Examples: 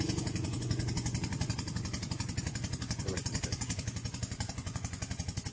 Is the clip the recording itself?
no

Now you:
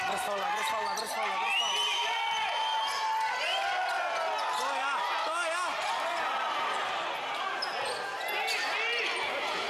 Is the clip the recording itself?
yes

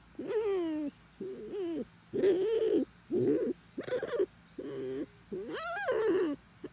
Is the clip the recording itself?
yes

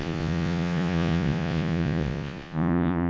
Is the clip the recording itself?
no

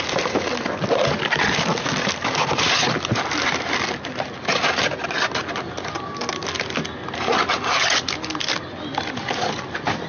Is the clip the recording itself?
yes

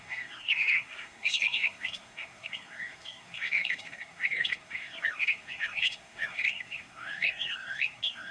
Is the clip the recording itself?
no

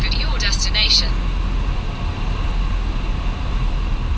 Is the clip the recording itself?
yes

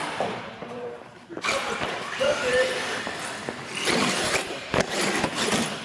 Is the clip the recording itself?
no